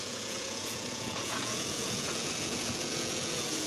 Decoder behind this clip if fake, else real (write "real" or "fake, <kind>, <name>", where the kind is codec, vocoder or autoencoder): fake, vocoder, Vocos